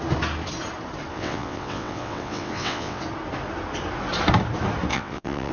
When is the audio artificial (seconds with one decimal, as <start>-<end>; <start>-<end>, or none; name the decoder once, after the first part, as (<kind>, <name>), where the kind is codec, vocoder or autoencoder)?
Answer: 1.1-3.0 (vocoder, WaveNeXt); 4.9-5.5